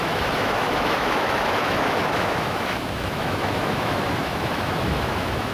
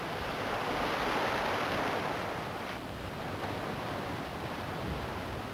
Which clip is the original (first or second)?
second